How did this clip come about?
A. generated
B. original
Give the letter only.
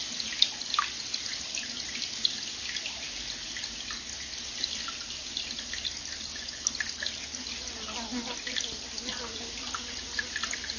B